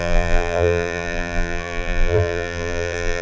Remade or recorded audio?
remade